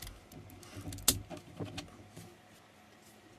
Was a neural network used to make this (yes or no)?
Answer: no